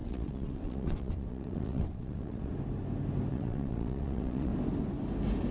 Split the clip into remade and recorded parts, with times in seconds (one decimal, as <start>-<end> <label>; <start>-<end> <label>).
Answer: 0.0-2.5 remade; 2.5-3.3 recorded; 3.3-4.5 remade; 4.5-5.5 recorded